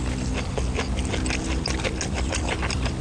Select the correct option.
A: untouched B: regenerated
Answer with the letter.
A